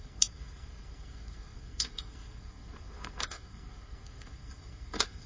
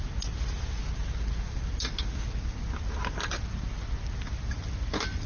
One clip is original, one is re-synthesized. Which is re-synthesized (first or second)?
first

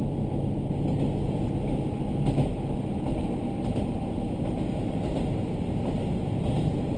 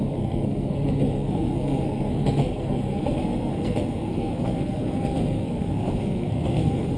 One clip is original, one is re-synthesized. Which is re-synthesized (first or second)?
second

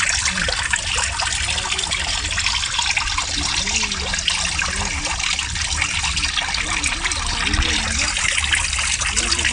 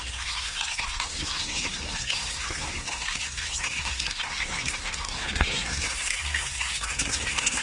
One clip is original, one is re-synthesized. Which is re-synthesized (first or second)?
second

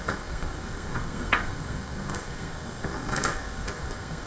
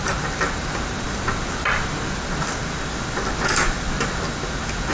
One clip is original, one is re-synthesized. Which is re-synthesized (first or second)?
first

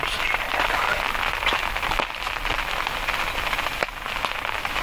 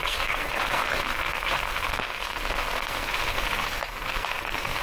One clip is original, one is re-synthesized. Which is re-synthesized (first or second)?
second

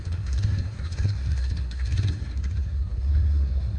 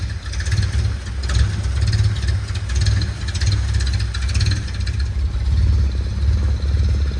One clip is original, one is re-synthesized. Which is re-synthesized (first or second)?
first